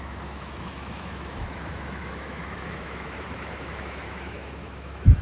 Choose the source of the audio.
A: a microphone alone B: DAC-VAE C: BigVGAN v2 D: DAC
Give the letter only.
B